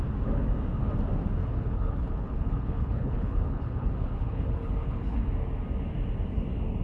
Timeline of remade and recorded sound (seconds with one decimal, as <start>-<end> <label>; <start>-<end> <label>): 0.0-1.4 recorded; 1.4-5.2 remade; 5.2-6.8 recorded